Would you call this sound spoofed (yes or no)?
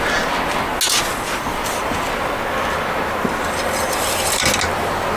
no